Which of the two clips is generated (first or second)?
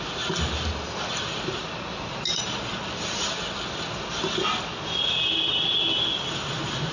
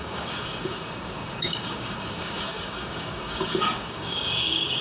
second